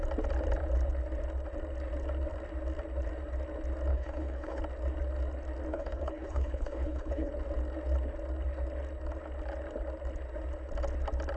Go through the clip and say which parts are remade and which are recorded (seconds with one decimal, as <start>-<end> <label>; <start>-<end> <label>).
0.0-3.9 recorded; 3.9-4.6 remade; 4.6-5.7 recorded; 5.7-7.3 remade; 7.3-11.4 recorded